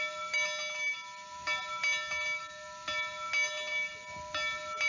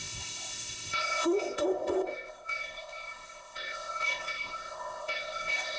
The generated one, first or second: second